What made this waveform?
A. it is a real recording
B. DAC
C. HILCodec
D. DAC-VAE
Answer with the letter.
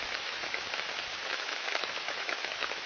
D